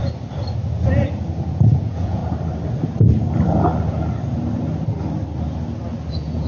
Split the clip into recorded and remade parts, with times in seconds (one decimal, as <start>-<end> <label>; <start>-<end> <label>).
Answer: 0.0-1.3 recorded; 1.3-2.2 remade; 2.2-6.1 recorded; 6.1-6.5 remade